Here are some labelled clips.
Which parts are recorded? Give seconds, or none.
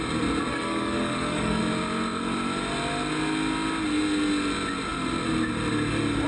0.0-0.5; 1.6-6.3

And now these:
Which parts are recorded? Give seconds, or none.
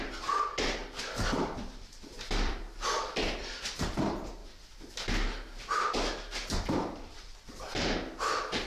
4.4-6.2; 7.7-8.7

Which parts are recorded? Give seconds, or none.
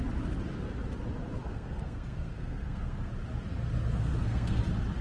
0.0-1.5; 3.1-4.0; 4.6-5.0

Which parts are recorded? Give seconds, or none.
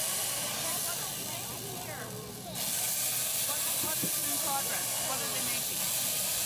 0.0-6.5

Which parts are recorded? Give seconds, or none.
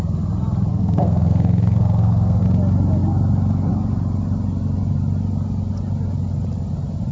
0.0-0.7; 2.4-7.1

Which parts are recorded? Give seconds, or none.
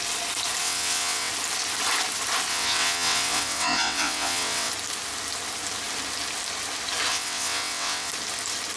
0.0-0.6; 1.3-2.5; 4.7-7.1; 8.1-8.8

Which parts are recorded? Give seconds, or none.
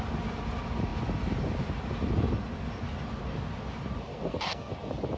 0.0-4.1; 4.7-5.2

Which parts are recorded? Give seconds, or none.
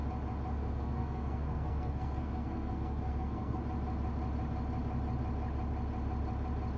0.0-0.5; 3.6-6.8